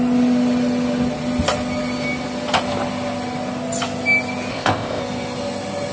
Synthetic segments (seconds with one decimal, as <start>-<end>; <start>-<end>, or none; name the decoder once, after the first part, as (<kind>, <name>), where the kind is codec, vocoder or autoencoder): 4.5-5.0 (codec, ZipCodec)